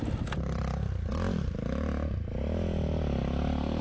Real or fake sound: real